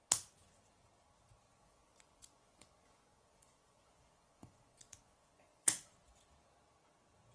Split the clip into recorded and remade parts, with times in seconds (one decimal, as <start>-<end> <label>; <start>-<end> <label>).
0.0-1.5 recorded; 1.5-5.9 remade; 5.9-7.3 recorded